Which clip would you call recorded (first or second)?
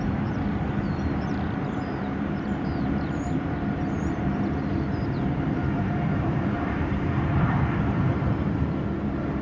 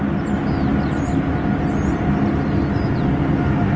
second